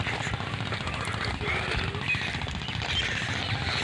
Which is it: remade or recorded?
recorded